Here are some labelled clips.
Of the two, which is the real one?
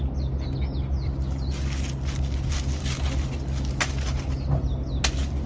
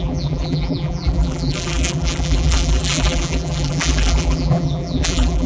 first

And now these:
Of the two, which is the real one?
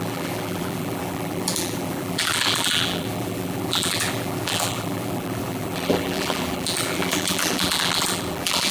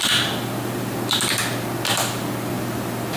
second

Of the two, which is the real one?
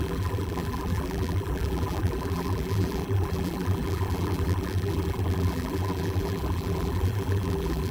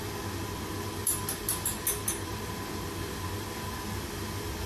second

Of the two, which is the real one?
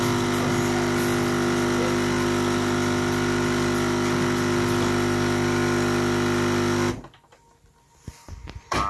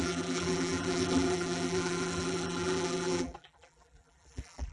first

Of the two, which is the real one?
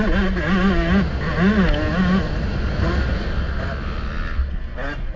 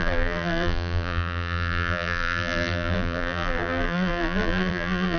first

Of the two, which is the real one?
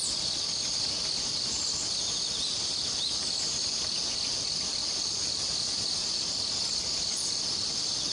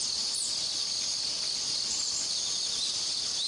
second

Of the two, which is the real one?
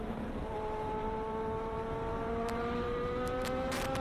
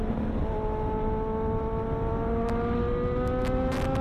second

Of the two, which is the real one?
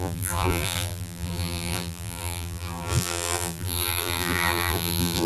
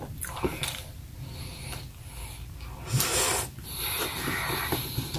second